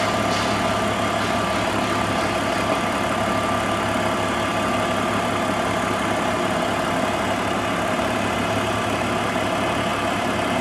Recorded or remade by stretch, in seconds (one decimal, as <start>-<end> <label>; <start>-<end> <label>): 0.0-10.6 recorded

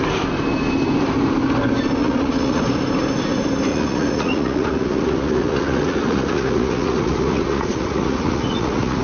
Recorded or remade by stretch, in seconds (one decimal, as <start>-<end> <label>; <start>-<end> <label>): 0.0-2.0 recorded; 2.0-2.6 remade; 2.6-3.7 recorded; 3.7-9.0 remade

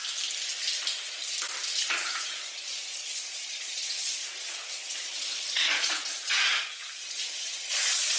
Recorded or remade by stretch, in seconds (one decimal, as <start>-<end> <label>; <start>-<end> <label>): 0.0-1.8 recorded; 1.8-8.2 remade

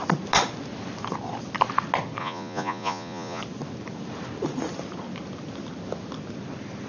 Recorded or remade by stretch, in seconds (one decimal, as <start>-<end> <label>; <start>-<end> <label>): 0.0-2.2 recorded; 2.2-3.4 remade; 3.4-6.9 recorded

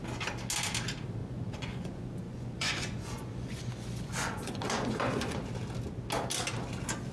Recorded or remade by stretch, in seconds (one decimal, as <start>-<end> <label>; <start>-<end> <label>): 0.0-1.2 recorded; 1.2-5.4 remade; 5.4-7.1 recorded